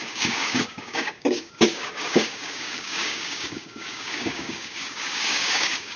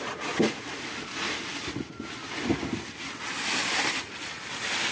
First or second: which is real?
second